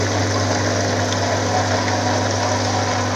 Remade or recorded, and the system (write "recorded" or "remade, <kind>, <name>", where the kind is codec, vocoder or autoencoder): recorded